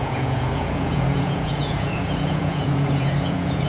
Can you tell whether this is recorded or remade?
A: remade